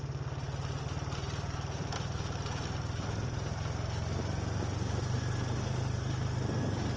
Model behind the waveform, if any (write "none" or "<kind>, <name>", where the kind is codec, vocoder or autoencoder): none